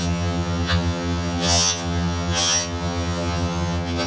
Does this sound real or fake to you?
fake